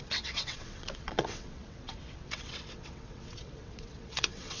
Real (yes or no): no